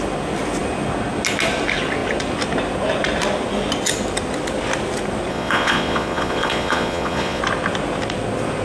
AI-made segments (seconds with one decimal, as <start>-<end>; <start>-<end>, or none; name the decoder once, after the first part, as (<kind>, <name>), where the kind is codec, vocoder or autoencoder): 5.3-7.4 (vocoder, Vocos)